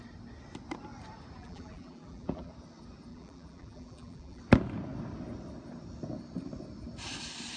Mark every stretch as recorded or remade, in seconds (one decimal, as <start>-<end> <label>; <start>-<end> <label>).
0.0-1.4 recorded; 1.4-2.5 remade; 2.5-3.1 recorded; 3.1-4.4 remade; 4.4-7.6 recorded